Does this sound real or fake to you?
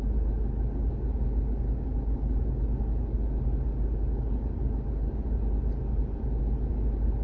real